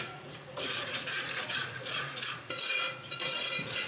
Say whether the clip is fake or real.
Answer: fake